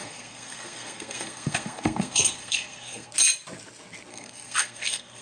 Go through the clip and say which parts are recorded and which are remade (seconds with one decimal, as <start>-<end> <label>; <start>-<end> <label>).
0.0-3.1 remade; 3.1-4.1 recorded; 4.1-5.2 remade